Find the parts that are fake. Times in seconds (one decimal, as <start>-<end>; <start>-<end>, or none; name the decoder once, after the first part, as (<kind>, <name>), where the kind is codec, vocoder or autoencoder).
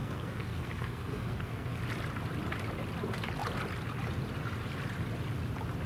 0.0-1.8 (codec, SNAC)